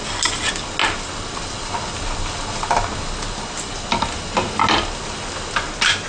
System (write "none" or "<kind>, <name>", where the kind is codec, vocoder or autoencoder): none